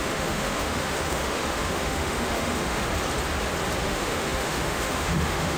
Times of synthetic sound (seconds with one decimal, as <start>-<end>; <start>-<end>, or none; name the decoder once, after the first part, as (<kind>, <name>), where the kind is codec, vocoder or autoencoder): 0.0-2.9 (autoencoder, DAC-VAE); 3.8-5.6